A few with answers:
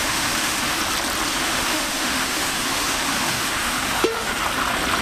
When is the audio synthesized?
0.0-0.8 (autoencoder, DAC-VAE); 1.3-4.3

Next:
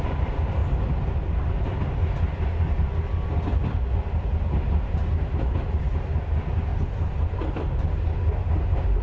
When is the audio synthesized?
none

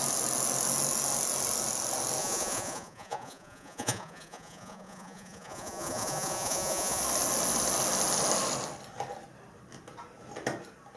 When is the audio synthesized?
2.2-7.0 (vocoder, Vocos)

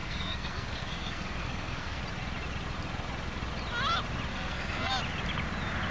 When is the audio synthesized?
0.0-2.0 (codec, SNAC); 4.3-4.9

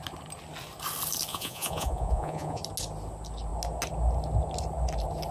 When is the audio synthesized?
1.3-2.6 (vocoder, Vocos)